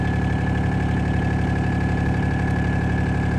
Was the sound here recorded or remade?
remade